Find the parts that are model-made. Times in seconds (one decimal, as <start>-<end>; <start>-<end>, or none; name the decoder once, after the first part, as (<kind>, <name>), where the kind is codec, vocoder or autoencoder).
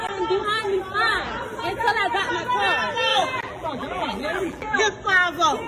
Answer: 3.1-4.8 (vocoder, BigVGAN v2)